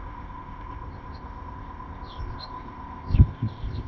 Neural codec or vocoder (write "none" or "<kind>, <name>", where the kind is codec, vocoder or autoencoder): codec, ZipCodec